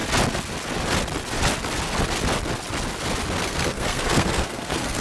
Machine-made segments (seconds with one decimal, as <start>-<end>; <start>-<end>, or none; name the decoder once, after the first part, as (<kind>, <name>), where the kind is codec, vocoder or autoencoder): 3.4-5.0 (codec, SNAC)